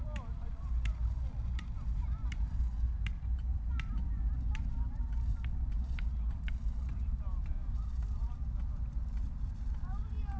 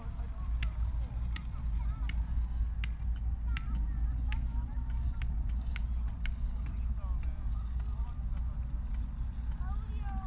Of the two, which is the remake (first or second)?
first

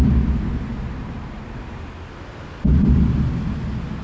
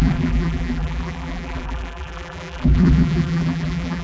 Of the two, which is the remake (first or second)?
second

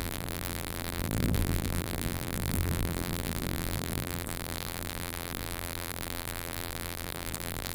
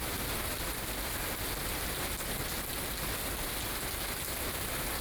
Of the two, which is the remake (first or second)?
first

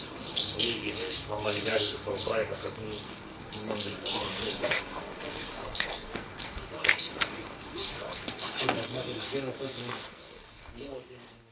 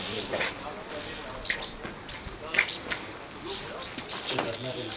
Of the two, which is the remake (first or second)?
first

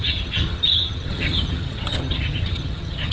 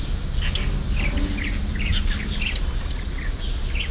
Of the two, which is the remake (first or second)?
first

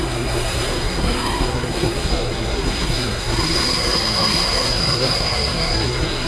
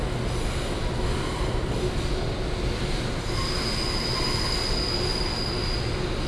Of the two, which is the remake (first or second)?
first